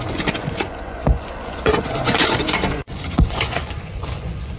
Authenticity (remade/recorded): remade